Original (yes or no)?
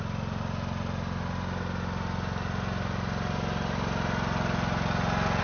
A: yes